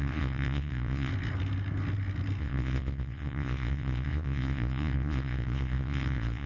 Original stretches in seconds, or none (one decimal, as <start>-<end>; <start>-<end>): 1.1-2.4